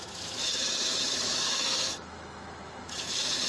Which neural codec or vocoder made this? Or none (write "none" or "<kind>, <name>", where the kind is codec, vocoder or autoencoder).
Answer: autoencoder, DAC-VAE